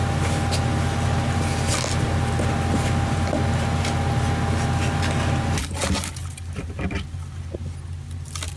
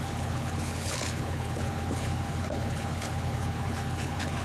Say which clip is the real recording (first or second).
first